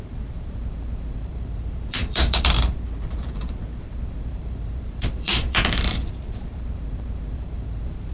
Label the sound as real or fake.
fake